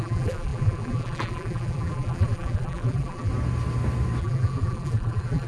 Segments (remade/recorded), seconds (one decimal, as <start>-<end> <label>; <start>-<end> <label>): 0.0-3.3 remade; 3.3-4.2 recorded; 4.2-5.5 remade